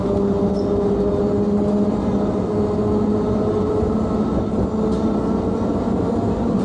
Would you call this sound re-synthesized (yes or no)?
no